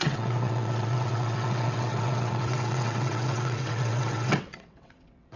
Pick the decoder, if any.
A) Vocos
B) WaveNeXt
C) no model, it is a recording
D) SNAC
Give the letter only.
B